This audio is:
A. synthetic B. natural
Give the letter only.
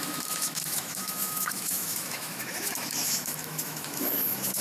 A